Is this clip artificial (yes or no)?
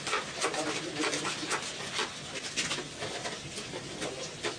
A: no